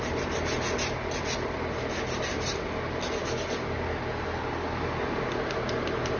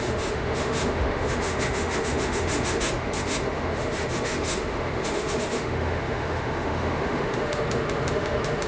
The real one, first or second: first